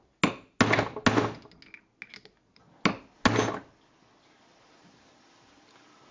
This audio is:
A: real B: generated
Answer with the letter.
A